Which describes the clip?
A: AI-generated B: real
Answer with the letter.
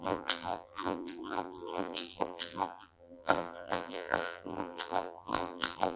A